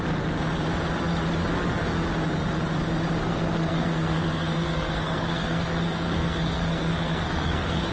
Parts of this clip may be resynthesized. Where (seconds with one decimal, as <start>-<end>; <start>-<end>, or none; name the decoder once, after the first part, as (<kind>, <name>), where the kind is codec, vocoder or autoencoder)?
3.2-7.9 (codec, SNAC)